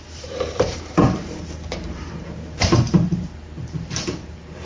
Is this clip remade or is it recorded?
remade